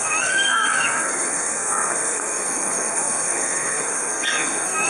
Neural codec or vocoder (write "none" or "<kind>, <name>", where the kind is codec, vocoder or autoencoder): codec, SNAC